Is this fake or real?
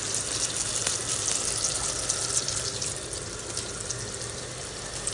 real